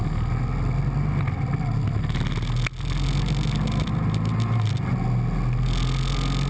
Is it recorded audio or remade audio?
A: recorded